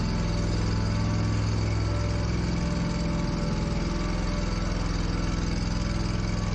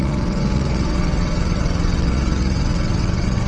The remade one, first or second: second